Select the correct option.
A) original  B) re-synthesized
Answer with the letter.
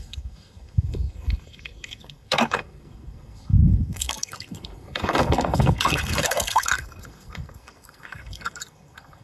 B